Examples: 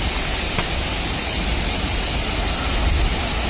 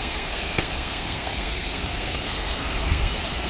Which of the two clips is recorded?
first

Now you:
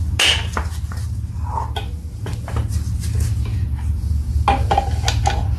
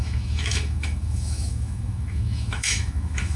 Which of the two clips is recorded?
first